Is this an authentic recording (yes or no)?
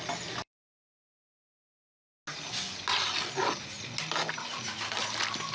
yes